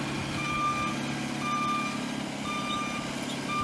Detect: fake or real real